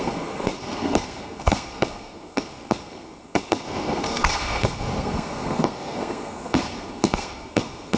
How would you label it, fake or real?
fake